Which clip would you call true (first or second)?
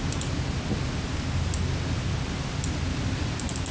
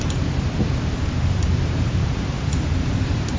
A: first